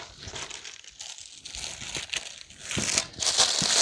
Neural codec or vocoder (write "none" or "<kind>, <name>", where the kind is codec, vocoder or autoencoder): none